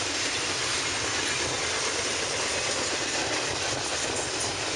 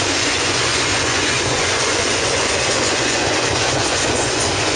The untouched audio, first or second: first